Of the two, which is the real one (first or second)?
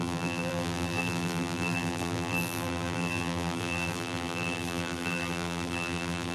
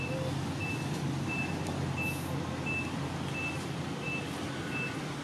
second